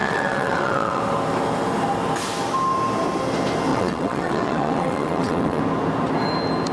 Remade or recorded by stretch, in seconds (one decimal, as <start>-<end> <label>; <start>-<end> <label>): 0.0-1.0 remade; 1.0-3.7 recorded; 3.7-5.6 remade; 5.6-6.7 recorded